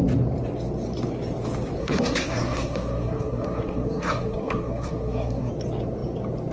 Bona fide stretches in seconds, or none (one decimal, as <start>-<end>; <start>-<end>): 0.0-1.8; 5.5-6.5

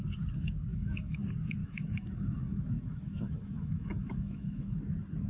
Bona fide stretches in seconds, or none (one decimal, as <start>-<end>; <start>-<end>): 0.0-0.7; 1.2-1.6; 4.8-5.3

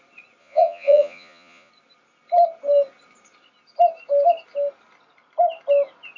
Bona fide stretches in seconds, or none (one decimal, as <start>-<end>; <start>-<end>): 0.0-0.4; 1.7-6.2

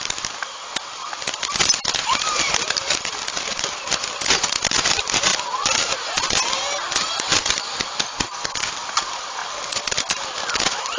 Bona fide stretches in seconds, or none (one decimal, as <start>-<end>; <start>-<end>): 5.3-8.1; 9.4-10.4

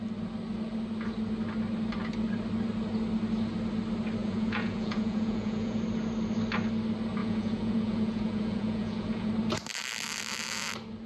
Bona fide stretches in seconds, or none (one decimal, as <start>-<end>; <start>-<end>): 0.0-4.2; 5.8-7.2; 9.3-11.1